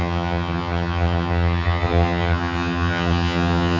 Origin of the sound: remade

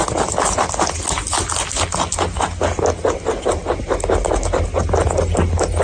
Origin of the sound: recorded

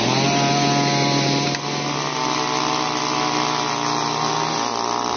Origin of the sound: recorded